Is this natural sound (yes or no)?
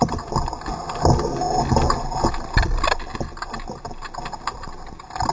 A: yes